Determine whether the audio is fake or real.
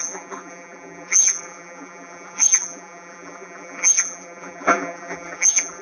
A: fake